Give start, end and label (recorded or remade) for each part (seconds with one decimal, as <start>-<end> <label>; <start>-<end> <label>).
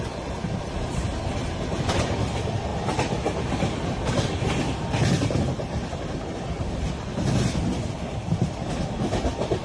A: 0.0-9.6 recorded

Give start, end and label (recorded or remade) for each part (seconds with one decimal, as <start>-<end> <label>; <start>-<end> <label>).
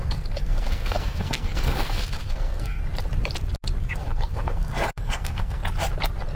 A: 0.0-2.8 remade; 2.8-3.8 recorded; 3.8-5.6 remade; 5.6-6.4 recorded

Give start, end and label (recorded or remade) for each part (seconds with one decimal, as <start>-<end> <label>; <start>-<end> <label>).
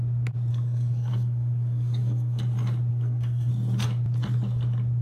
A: 0.0-0.5 recorded; 0.5-2.4 remade; 2.4-2.9 recorded; 2.9-3.5 remade; 3.5-5.0 recorded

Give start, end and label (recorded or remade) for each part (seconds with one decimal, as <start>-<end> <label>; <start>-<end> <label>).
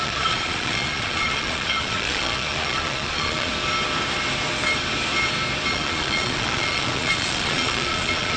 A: 0.0-3.5 remade; 3.5-5.7 recorded; 5.7-8.4 remade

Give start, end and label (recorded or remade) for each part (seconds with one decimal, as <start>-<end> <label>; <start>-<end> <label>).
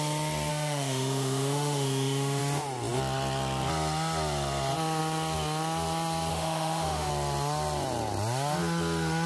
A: 0.0-0.5 recorded; 0.5-2.4 remade; 2.4-6.3 recorded; 6.3-7.1 remade; 7.1-9.3 recorded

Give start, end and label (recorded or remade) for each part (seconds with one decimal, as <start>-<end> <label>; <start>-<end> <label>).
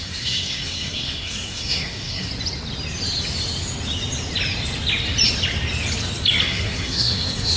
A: 0.0-2.3 remade; 2.3-6.4 recorded; 6.4-7.6 remade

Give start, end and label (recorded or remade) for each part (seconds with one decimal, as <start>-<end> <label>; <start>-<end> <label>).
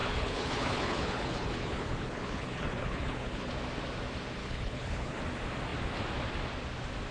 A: 0.0-3.5 remade; 3.5-4.4 recorded; 4.4-5.2 remade; 5.2-7.1 recorded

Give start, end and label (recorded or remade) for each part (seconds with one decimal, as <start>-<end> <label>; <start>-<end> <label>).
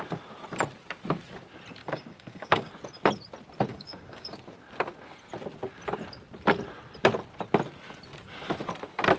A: 0.0-1.8 recorded; 1.8-2.7 remade; 2.7-3.7 recorded; 3.7-4.4 remade; 4.4-9.2 recorded